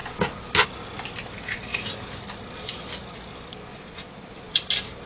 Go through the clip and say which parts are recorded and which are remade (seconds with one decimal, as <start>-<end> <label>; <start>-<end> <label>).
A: 0.0-3.7 recorded; 3.7-4.5 remade; 4.5-5.1 recorded